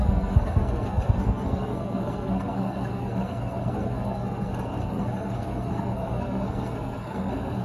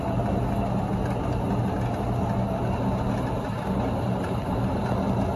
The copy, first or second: first